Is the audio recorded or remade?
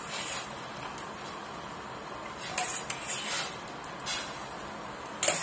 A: recorded